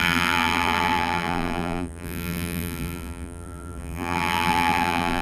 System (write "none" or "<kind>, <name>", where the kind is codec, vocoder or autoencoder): vocoder, BigVGAN v2